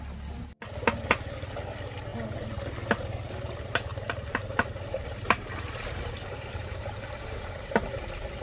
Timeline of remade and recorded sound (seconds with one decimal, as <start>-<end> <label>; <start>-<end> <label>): 0.0-3.9 recorded; 3.9-8.0 remade; 8.0-8.4 recorded